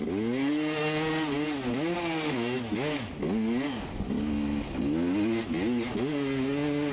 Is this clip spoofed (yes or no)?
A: no